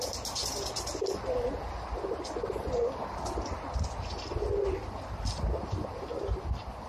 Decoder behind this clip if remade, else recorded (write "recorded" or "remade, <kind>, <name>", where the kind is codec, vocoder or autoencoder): recorded